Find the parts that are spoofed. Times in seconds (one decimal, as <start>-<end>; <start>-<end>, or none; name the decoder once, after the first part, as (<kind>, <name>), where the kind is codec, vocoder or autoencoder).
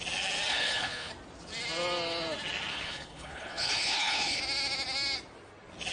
0.5-1.1 (codec, HILCodec); 2.7-4.4